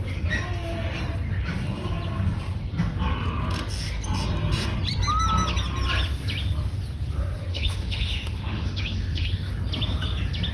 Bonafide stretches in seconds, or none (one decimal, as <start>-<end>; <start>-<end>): 0.0-7.5; 9.5-10.5